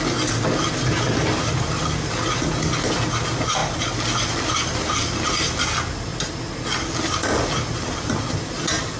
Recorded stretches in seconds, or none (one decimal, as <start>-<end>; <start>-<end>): 0.0-9.0